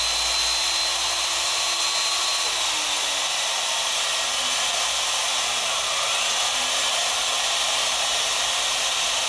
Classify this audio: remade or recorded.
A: recorded